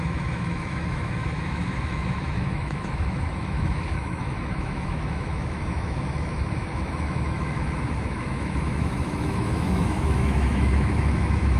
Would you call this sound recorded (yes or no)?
no